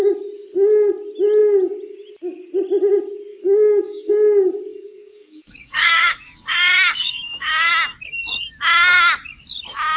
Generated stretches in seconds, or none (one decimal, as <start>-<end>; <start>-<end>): 3.3-4.1; 4.7-7.7